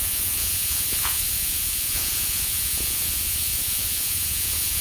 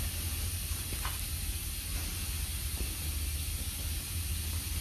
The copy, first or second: first